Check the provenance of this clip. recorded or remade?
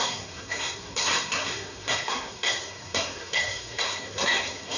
remade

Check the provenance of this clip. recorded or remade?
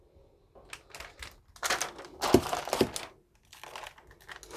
recorded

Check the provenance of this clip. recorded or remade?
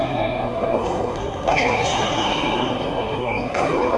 remade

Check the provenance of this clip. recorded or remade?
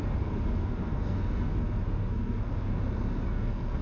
remade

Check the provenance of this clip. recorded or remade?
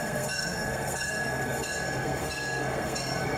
remade